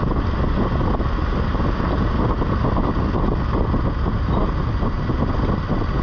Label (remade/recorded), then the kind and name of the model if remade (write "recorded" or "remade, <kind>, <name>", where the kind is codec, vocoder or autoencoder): recorded